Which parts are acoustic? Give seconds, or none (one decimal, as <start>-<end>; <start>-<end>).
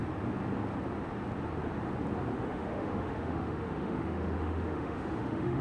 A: 0.0-2.3